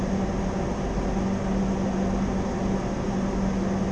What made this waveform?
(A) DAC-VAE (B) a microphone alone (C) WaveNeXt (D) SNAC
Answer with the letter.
B